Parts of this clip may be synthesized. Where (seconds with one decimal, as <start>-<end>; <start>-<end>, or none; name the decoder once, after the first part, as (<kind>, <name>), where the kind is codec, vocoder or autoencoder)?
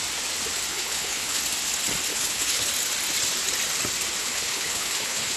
0.7-1.4 (codec, HILCodec); 2.1-2.7; 4.2-5.4